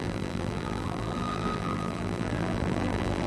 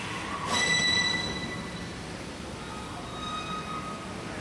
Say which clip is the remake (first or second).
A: first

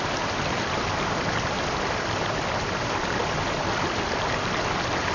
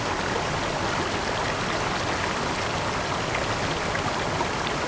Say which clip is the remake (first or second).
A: first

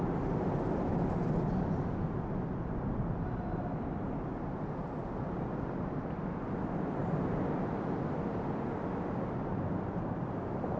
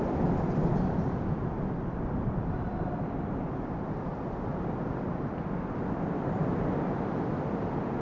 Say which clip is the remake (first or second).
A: second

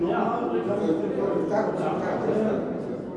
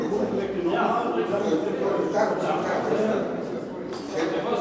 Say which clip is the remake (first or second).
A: second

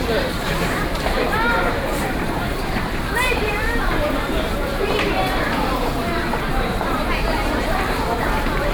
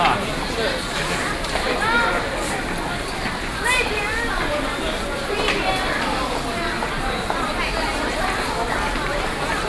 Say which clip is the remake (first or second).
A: first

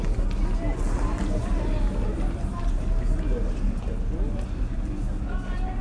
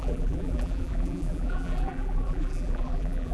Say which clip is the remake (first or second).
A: second